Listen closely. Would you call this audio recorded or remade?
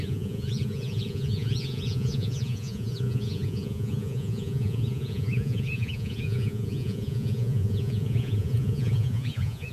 remade